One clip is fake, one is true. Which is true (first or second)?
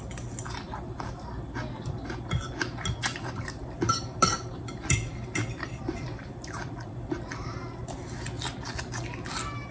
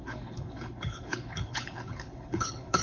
first